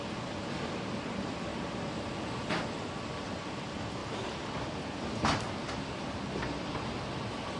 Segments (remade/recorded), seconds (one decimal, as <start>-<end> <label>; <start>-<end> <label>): 0.0-7.6 recorded